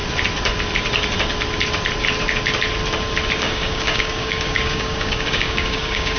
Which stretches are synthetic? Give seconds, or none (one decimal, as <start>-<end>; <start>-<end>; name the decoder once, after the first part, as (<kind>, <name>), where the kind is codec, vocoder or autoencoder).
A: 3.4-6.2 (codec, DAC)